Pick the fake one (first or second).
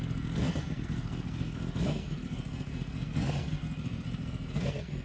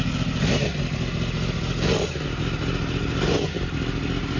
first